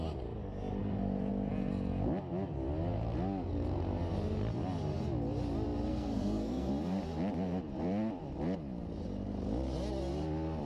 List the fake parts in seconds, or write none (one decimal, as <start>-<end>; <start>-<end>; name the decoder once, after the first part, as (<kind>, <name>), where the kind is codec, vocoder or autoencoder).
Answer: 5.9-6.7 (codec, SNAC)